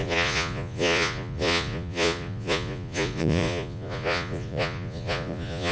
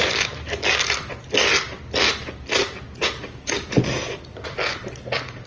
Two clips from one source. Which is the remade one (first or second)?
first